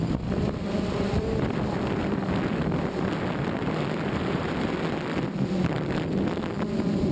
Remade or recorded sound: remade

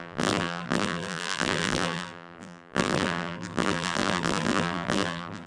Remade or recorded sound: remade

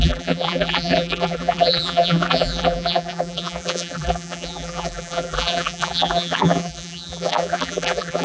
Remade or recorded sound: remade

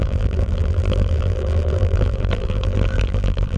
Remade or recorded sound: remade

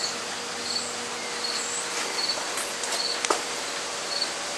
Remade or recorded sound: remade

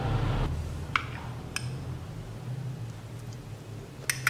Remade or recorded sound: recorded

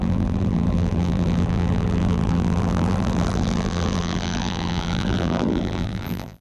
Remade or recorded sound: remade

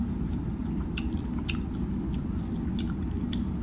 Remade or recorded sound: recorded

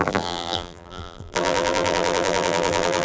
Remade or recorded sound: remade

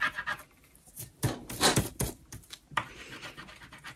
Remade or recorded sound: remade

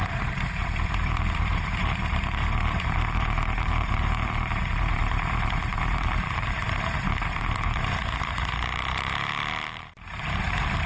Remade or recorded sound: remade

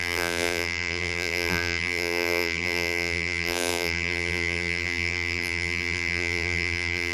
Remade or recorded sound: remade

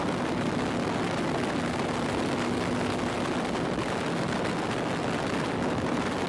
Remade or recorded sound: recorded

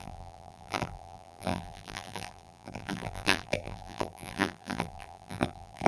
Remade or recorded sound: remade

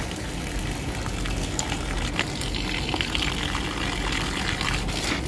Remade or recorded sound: recorded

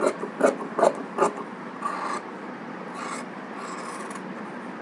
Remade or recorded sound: recorded